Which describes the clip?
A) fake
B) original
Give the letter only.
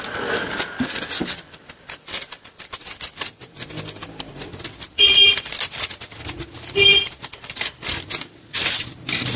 A